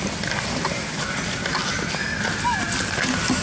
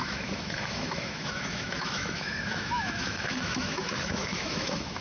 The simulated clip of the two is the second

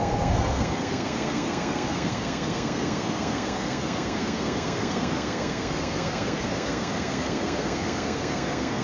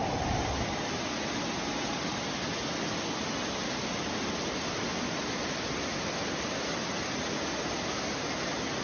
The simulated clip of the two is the first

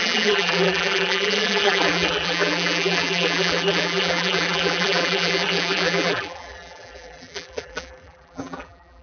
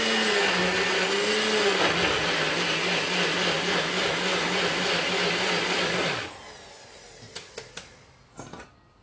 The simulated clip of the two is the first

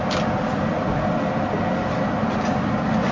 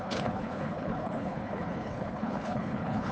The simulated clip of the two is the second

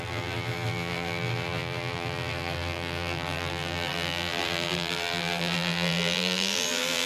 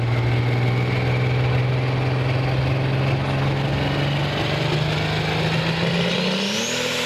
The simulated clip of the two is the first